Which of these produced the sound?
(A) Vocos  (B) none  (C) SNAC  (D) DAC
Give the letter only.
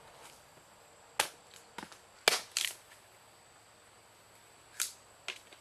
B